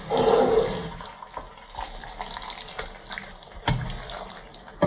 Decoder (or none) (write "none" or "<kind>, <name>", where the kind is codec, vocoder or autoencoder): none